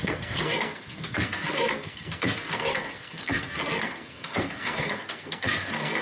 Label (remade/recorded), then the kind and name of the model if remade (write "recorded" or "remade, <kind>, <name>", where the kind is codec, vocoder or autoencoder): remade, codec, SNAC